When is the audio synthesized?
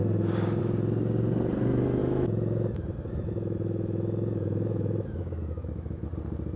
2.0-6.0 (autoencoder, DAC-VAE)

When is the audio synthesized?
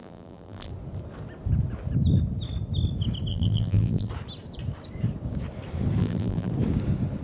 0.0-0.7 (vocoder, BigVGAN v2); 3.3-4.1; 6.0-6.5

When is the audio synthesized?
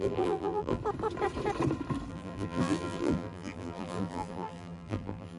0.0-0.8 (vocoder, BigVGAN v2); 2.1-5.4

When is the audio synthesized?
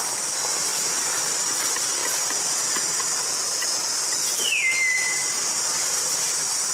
none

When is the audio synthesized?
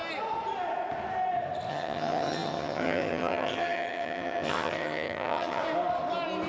1.7-5.6 (vocoder, HiFi-GAN)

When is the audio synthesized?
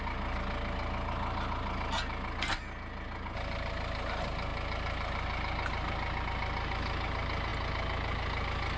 none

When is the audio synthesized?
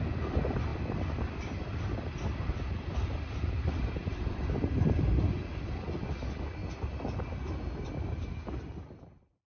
0.0-6.6 (vocoder, BigVGAN v2); 8.0-9.6